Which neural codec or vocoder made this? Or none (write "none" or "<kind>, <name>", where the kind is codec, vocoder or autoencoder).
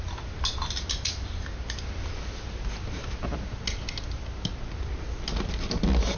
none